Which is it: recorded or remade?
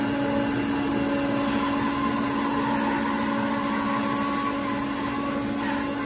recorded